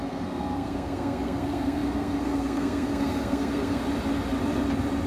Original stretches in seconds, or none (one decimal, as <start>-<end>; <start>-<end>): 3.8-5.1